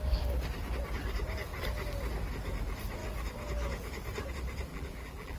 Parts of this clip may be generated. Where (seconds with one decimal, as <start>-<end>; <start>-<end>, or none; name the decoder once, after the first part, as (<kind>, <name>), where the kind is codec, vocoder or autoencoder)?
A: 4.7-5.4 (vocoder, BigVGAN v2)